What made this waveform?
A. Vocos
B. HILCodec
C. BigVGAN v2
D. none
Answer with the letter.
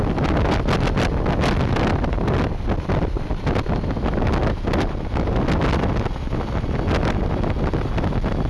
D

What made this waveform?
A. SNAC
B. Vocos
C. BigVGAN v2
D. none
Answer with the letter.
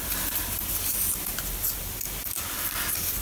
D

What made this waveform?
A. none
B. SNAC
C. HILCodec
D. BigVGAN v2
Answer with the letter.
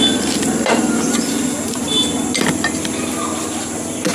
A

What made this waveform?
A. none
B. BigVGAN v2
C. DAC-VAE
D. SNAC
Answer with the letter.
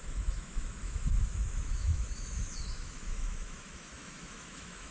C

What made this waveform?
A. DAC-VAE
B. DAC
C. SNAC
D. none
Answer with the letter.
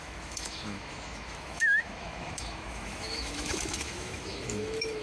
A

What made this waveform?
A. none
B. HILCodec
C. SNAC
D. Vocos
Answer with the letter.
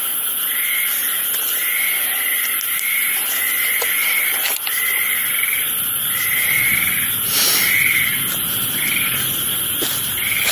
A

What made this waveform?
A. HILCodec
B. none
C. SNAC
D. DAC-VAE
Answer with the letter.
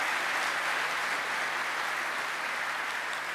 B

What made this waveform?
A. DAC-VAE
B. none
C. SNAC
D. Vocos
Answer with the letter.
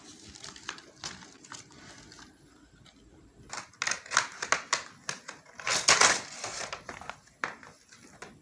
B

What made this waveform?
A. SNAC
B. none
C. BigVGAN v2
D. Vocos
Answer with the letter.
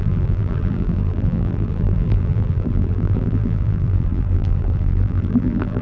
C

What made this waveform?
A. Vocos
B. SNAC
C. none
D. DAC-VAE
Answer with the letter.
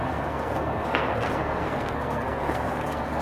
B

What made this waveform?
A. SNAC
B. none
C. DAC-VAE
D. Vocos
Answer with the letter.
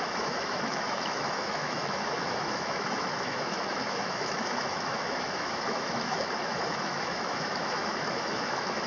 C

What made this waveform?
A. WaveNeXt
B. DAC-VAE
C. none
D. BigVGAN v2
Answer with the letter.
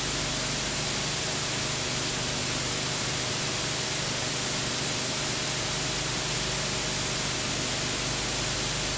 C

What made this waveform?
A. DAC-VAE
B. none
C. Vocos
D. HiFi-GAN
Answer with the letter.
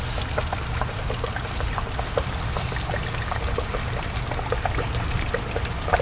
B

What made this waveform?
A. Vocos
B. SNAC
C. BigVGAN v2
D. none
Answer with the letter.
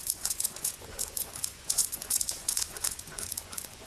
A